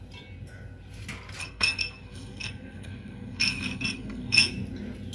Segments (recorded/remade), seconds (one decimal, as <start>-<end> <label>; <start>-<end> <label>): 0.0-1.4 recorded; 1.4-4.5 remade; 4.5-5.1 recorded